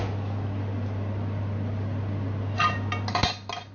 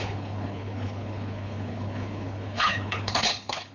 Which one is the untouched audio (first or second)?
first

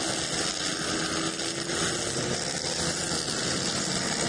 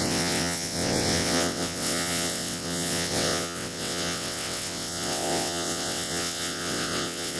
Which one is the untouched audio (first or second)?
first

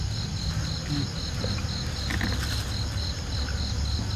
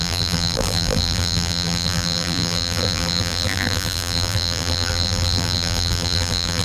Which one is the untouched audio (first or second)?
first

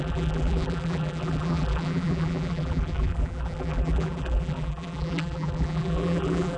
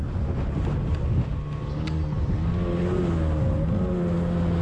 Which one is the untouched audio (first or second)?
second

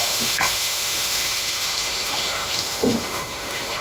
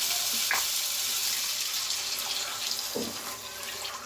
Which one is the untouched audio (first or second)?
second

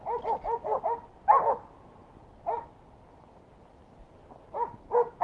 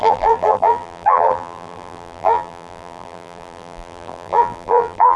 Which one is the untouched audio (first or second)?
first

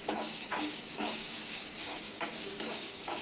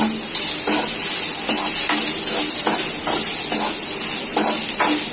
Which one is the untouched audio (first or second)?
second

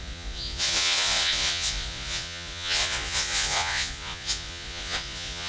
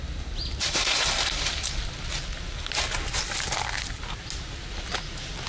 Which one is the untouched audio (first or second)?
second